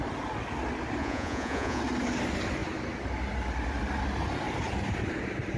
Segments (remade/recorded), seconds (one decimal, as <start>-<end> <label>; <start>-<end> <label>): 0.0-1.0 recorded; 1.0-1.8 remade; 1.8-5.6 recorded

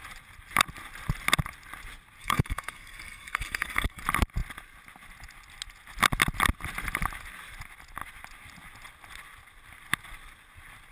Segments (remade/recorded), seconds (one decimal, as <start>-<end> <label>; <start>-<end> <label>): 0.0-2.2 recorded; 2.2-4.0 remade; 4.0-10.9 recorded

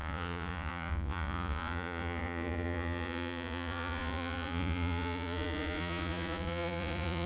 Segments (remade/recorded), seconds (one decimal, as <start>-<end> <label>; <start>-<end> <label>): 0.0-7.3 remade

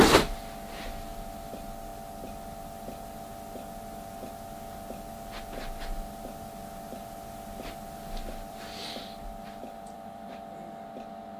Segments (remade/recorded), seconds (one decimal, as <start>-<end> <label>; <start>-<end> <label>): 0.0-8.2 recorded; 8.2-10.3 remade; 10.3-11.4 recorded